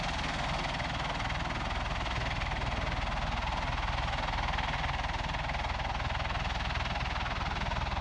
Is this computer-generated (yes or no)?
no